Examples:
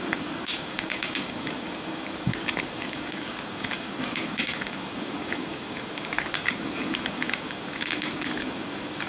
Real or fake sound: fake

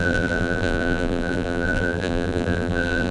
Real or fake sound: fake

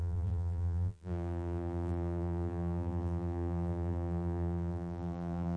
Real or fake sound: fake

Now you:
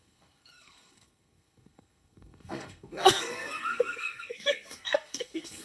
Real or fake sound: fake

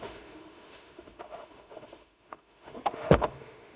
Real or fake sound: fake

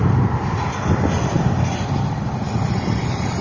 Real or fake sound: real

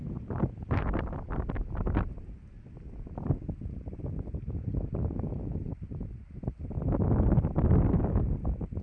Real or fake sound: real